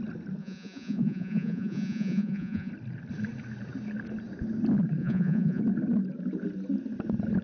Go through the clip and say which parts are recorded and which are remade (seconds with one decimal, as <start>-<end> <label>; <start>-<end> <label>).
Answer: 0.0-0.4 recorded; 0.4-2.7 remade; 2.7-5.0 recorded; 5.0-5.6 remade; 5.6-7.4 recorded